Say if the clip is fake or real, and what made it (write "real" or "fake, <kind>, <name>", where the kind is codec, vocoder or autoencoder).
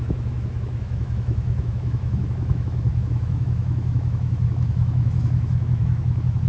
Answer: fake, autoencoder, DAC-VAE